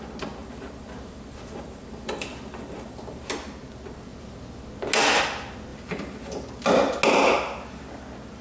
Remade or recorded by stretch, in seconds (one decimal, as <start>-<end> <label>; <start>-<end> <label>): 0.0-0.4 recorded; 0.4-3.3 remade; 3.3-5.7 recorded; 5.7-6.5 remade; 6.5-8.4 recorded